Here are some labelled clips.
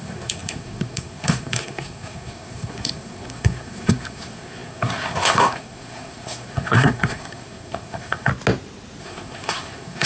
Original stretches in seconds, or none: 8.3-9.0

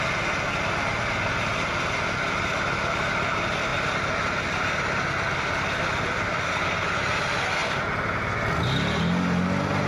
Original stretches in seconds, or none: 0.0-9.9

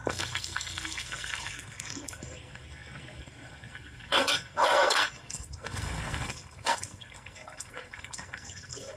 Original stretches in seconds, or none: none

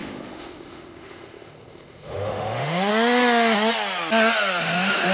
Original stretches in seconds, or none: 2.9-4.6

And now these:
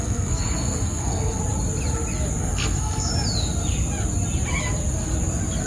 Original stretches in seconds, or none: 1.4-2.4; 3.1-5.7